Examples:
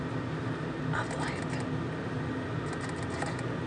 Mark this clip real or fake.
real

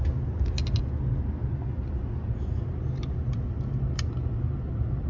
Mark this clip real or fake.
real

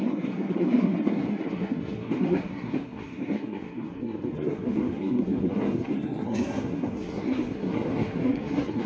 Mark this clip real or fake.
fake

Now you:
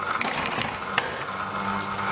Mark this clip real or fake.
real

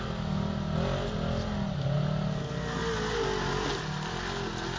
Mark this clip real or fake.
real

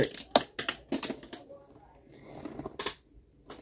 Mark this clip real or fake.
real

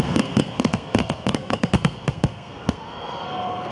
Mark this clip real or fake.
fake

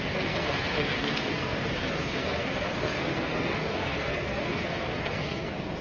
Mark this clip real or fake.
fake